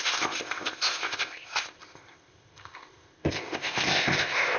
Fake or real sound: fake